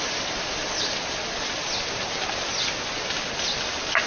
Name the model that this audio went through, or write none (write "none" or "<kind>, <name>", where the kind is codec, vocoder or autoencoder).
none